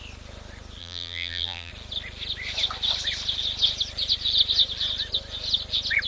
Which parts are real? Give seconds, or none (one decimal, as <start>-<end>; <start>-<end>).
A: 0.0-0.8; 1.7-6.1